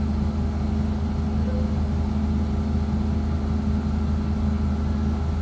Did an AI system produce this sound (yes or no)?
no